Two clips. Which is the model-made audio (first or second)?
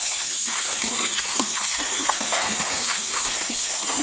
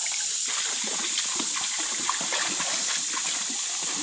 first